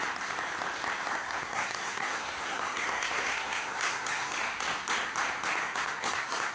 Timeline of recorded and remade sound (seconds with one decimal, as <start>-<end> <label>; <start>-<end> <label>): 0.0-1.2 recorded; 1.2-4.3 remade; 4.3-5.6 recorded; 5.6-6.5 remade